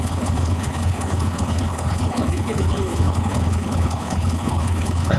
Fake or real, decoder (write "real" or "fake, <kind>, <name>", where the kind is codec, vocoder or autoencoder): fake, codec, HILCodec